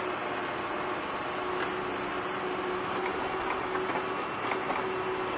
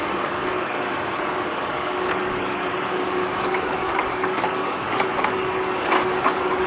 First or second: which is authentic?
first